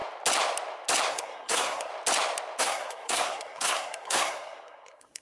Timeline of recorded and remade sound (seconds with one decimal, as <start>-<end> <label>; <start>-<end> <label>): 0.0-1.1 recorded; 1.1-1.9 remade; 1.9-2.6 recorded; 2.6-5.2 remade